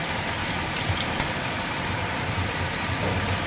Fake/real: real